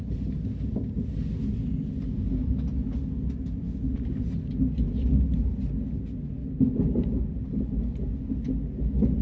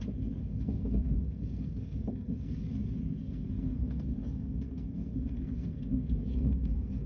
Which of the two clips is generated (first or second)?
second